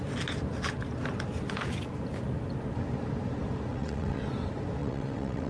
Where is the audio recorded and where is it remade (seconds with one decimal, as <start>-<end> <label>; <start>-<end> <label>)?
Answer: 0.0-3.7 recorded; 3.7-4.2 remade; 4.2-4.8 recorded; 4.8-5.5 remade